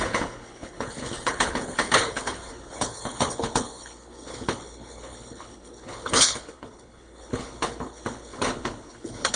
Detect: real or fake fake